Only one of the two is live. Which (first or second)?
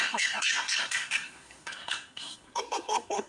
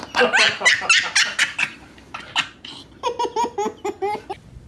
second